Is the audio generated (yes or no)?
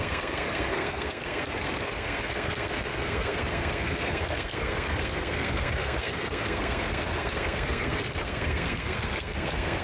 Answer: yes